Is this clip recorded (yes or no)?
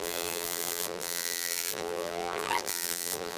no